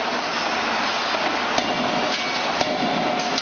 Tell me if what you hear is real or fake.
real